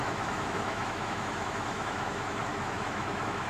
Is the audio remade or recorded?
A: remade